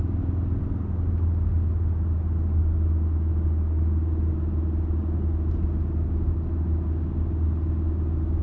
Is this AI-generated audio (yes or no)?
no